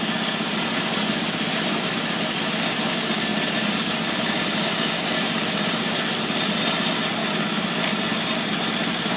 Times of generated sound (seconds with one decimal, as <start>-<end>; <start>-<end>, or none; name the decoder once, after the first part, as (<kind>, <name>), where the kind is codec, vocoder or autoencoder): 7.2-7.8 (autoencoder, DAC-VAE)